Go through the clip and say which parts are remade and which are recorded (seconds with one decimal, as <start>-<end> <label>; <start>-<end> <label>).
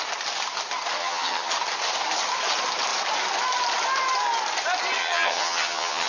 0.0-1.0 recorded; 1.0-1.5 remade; 1.5-5.0 recorded; 5.0-6.1 remade